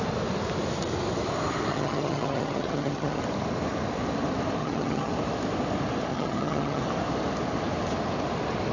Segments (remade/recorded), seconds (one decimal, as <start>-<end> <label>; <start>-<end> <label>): 0.0-1.7 recorded; 1.7-3.2 remade; 3.2-4.6 recorded; 4.6-5.1 remade; 5.1-6.1 recorded; 6.1-6.8 remade; 6.8-8.7 recorded